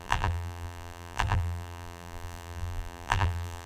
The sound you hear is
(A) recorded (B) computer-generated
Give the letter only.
B